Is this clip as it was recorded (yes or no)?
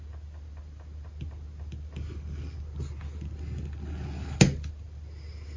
yes